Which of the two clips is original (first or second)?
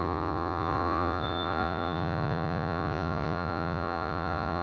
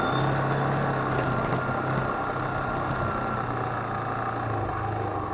second